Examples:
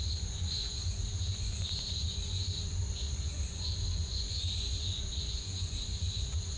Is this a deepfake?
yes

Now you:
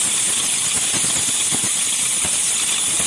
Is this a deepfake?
no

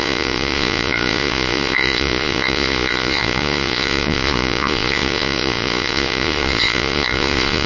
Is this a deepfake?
yes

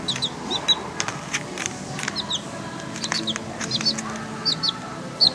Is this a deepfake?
no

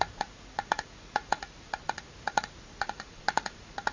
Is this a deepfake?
yes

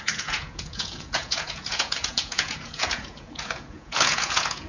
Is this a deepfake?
yes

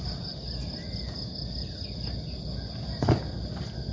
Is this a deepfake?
no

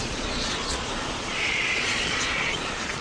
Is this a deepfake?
yes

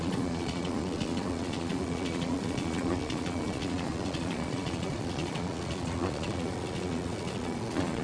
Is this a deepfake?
yes